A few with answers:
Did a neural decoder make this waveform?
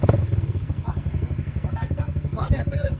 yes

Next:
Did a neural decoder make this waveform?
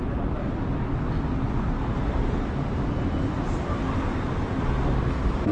no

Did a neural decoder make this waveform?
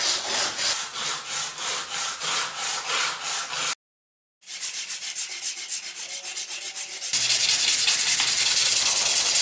no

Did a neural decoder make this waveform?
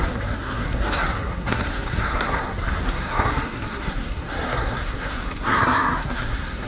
yes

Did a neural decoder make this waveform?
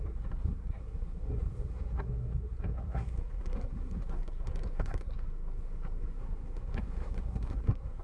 yes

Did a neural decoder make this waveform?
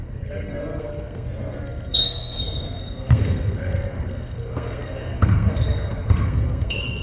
yes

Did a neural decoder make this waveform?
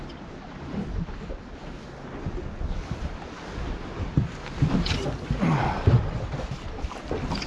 no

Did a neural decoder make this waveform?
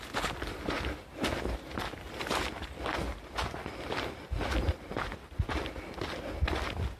no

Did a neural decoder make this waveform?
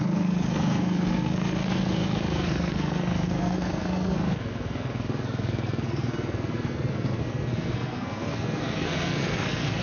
yes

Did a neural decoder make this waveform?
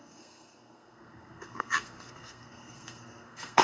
yes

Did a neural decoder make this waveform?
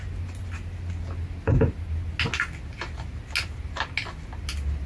no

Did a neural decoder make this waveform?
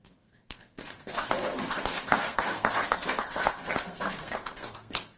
yes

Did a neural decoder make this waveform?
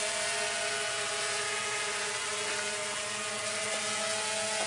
no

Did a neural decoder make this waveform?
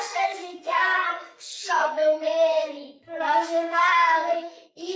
yes